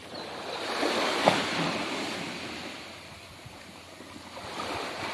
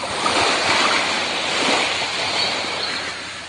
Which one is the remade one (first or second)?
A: first